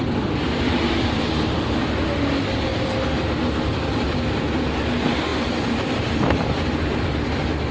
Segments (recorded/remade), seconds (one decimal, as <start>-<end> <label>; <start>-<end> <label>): 0.0-5.3 recorded; 5.3-7.1 remade; 7.1-7.7 recorded